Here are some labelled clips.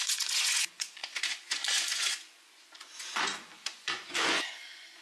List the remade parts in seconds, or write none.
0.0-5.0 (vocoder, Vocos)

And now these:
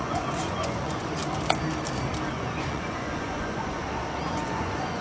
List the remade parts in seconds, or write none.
0.0-1.2 (vocoder, Vocos); 2.3-3.8; 4.3-5.0

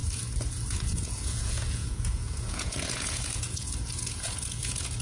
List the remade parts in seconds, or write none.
0.7-5.0 (vocoder, Vocos)